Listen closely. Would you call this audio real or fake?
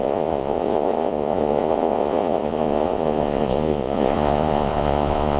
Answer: fake